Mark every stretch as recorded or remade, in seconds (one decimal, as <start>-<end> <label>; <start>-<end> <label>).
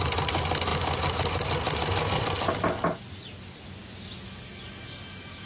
0.0-5.5 recorded